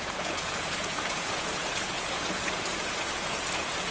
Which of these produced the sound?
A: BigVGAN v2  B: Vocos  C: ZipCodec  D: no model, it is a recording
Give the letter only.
B